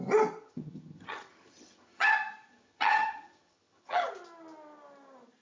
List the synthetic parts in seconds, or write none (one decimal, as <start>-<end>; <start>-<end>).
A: 0.4-2.1; 2.5-4.1